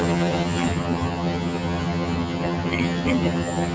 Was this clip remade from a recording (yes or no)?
yes